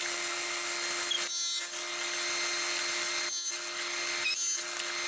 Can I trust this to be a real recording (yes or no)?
yes